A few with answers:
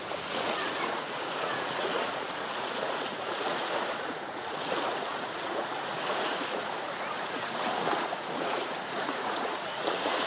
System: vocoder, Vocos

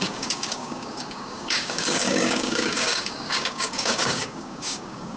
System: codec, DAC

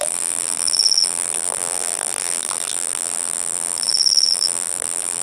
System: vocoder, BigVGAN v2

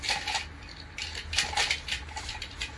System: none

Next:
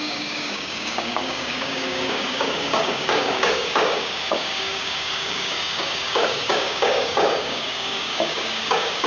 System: codec, DAC